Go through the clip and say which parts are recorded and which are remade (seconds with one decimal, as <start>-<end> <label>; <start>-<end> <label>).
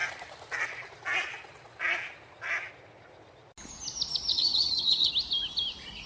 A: 0.0-4.3 recorded; 4.3-5.1 remade; 5.1-6.1 recorded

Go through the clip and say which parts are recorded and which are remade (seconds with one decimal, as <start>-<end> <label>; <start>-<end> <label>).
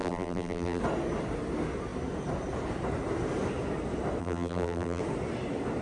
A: 0.0-0.8 remade; 0.8-4.2 recorded; 4.2-5.0 remade; 5.0-5.8 recorded